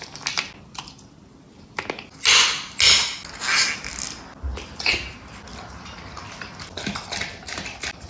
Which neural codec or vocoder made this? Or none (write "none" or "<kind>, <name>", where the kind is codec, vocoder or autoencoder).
none